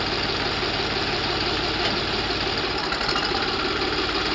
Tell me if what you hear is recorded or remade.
recorded